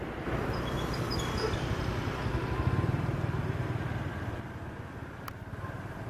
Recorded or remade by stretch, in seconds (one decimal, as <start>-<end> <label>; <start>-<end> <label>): 0.0-4.6 remade; 4.6-5.2 recorded; 5.2-6.1 remade